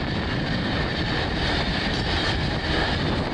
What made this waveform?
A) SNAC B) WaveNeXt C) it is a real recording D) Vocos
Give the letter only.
C